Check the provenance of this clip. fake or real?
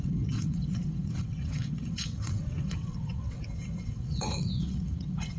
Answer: fake